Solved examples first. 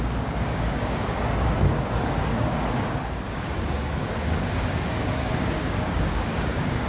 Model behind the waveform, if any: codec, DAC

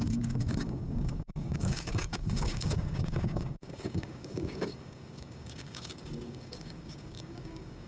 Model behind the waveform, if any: codec, DAC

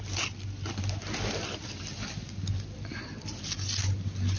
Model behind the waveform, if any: none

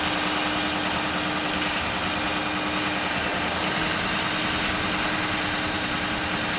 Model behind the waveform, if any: none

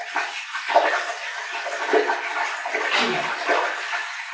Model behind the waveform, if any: none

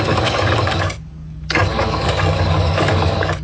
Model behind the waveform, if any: codec, DAC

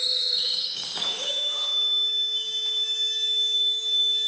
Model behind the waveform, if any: codec, DAC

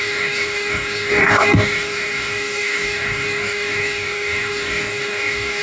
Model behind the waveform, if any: codec, DAC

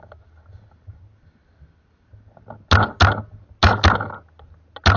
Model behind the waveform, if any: none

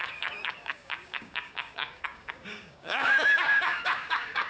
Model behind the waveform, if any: codec, DAC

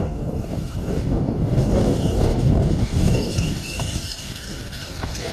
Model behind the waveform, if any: codec, DAC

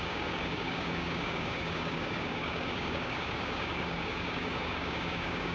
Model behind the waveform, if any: codec, DAC